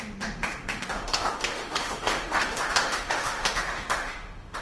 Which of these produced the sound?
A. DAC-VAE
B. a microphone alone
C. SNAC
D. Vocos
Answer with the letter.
A